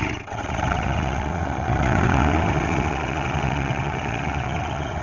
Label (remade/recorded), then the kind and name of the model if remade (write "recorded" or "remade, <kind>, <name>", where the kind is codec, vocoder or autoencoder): remade, vocoder, WaveNeXt